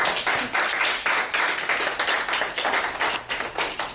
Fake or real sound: real